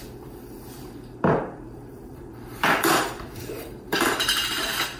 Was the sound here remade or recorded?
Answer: remade